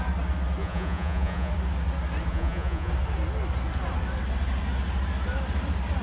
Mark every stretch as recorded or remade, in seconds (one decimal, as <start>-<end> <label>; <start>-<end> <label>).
0.0-0.6 recorded; 0.6-1.5 remade; 1.5-2.3 recorded; 2.3-2.9 remade; 2.9-6.0 recorded